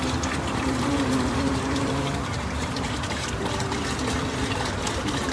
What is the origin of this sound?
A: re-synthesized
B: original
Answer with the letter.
A